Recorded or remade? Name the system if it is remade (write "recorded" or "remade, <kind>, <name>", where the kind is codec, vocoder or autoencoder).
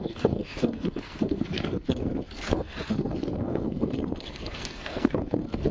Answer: remade, codec, SNAC